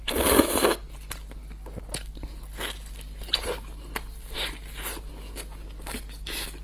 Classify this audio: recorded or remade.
recorded